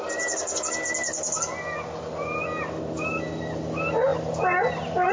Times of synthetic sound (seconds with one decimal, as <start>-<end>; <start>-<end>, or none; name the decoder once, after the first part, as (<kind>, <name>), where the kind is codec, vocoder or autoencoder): none